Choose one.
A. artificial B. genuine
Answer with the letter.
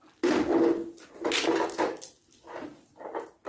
B